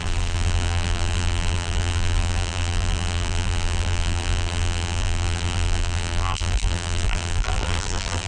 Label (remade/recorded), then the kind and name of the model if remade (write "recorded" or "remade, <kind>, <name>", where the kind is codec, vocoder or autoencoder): remade, vocoder, BigVGAN v2